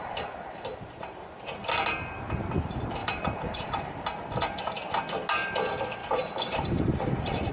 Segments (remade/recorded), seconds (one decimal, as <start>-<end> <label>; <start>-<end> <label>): 0.0-1.4 remade; 1.4-3.0 recorded; 3.0-4.0 remade; 4.0-6.0 recorded; 6.0-7.5 remade